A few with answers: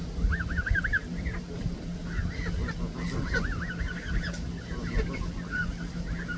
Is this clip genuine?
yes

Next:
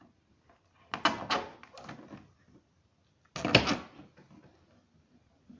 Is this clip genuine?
yes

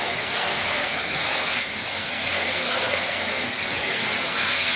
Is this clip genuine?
no